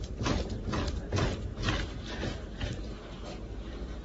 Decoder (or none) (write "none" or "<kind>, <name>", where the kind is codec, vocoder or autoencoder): none